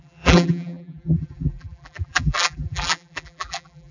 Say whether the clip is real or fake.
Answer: fake